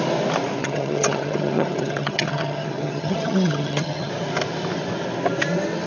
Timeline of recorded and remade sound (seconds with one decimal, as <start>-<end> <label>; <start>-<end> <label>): 0.0-0.6 recorded; 0.6-4.1 remade; 4.1-5.9 recorded